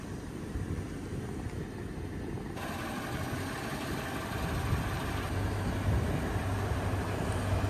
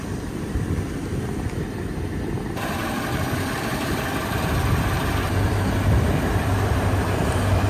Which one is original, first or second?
first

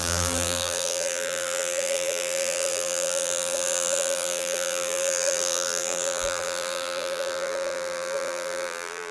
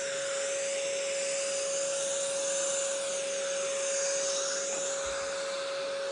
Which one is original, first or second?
second